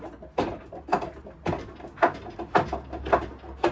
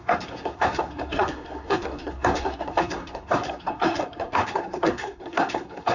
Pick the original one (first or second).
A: first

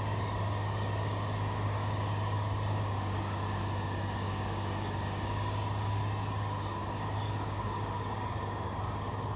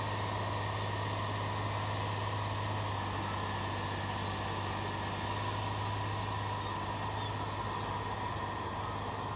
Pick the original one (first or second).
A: second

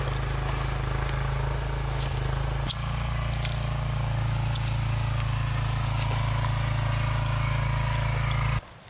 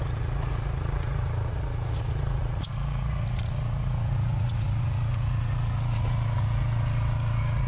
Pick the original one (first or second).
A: first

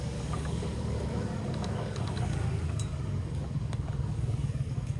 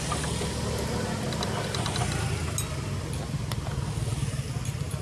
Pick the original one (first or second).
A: second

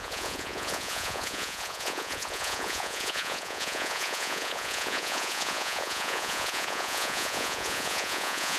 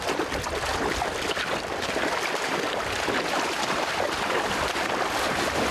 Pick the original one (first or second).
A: second